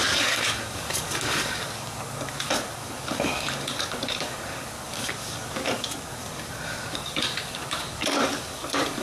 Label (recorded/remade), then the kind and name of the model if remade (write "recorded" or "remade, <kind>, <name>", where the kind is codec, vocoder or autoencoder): remade, codec, DAC